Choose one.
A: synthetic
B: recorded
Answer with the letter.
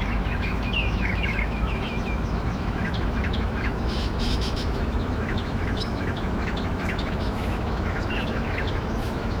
A